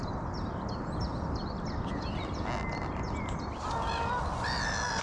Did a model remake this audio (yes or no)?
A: no